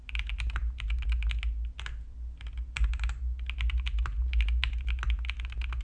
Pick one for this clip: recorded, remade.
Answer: recorded